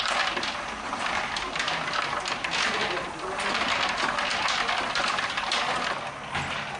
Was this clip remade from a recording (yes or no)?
no